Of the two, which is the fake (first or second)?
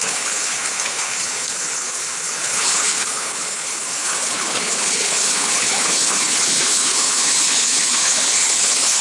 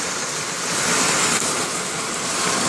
first